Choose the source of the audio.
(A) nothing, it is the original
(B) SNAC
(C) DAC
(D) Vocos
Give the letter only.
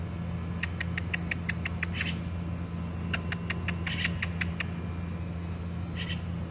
A